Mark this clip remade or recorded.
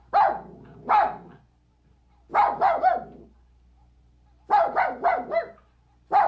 recorded